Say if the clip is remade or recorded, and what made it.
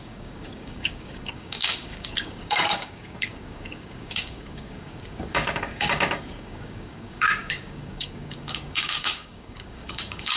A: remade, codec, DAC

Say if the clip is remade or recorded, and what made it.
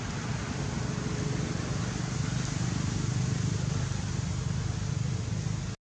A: recorded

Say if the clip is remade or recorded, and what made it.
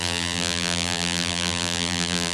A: remade, vocoder, BigVGAN v2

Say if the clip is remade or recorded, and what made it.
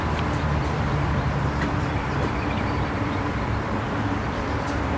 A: remade, vocoder, BigVGAN v2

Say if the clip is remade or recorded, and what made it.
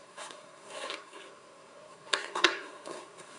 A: remade, codec, SNAC